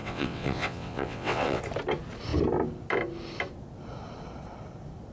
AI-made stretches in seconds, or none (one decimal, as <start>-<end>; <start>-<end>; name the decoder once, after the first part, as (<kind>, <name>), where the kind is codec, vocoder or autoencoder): 0.0-1.6 (vocoder, WaveNeXt)